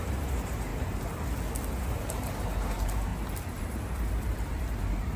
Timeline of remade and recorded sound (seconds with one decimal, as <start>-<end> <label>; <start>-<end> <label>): 0.0-0.7 remade; 0.7-1.7 recorded; 1.7-3.1 remade; 3.1-3.6 recorded; 3.6-5.2 remade